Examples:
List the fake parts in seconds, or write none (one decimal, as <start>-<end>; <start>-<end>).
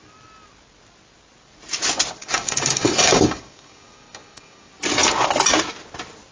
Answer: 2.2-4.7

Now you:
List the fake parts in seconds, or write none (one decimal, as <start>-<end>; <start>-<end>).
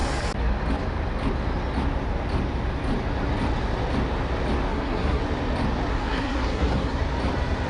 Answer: 4.7-5.2; 5.9-7.0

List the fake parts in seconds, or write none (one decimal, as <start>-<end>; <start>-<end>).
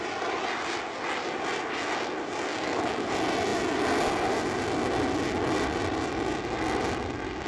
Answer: 2.5-3.1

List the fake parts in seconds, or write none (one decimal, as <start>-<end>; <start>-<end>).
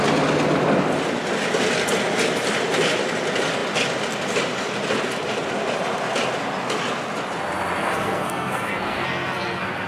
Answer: 7.8-9.9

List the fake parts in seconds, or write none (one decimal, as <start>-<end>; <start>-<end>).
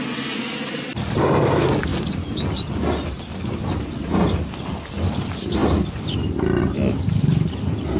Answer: 5.6-6.6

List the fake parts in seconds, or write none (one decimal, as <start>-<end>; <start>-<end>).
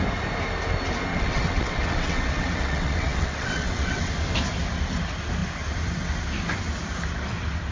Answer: 1.1-4.1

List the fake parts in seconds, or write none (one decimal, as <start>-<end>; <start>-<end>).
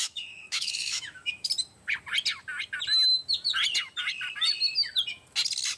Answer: 0.0-1.5